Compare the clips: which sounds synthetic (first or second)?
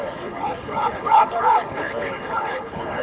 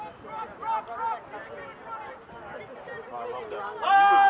first